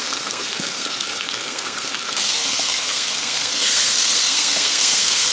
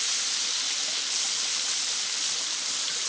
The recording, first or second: second